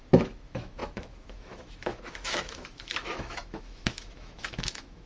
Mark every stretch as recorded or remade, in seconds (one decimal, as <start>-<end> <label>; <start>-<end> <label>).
0.0-5.1 remade